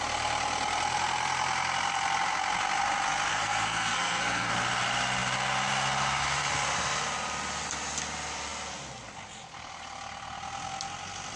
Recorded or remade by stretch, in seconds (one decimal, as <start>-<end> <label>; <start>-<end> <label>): 0.0-3.3 recorded; 3.3-4.5 remade; 4.5-11.4 recorded